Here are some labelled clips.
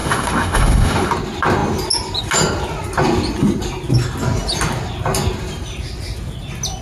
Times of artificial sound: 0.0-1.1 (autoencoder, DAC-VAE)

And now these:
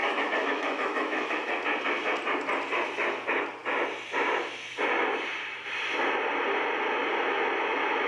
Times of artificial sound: 0.0-1.5 (autoencoder, DAC-VAE)